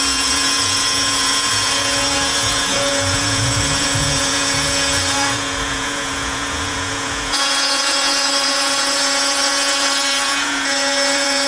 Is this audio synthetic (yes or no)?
yes